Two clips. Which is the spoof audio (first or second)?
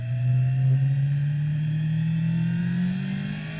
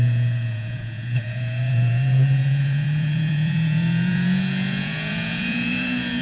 second